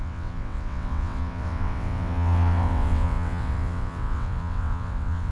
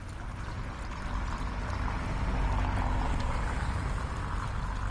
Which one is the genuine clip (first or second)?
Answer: second